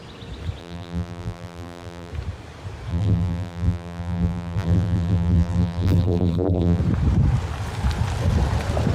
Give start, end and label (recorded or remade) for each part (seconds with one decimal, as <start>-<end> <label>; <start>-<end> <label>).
0.0-0.6 recorded; 0.6-2.1 remade; 2.1-2.9 recorded; 2.9-6.8 remade; 6.8-8.9 recorded